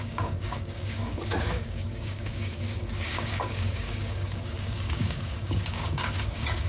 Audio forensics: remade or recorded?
remade